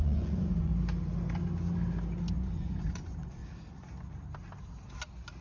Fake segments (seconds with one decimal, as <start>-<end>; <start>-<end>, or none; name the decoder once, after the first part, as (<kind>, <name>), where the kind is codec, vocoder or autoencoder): 0.0-0.7 (vocoder, Vocos); 2.3-3.4